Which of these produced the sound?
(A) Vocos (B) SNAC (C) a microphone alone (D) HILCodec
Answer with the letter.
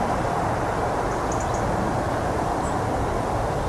C